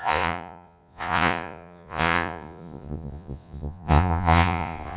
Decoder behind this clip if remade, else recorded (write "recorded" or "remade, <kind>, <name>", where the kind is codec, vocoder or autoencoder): remade, vocoder, Vocos